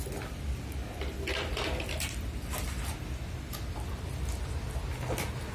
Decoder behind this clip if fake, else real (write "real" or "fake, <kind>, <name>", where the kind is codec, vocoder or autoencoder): real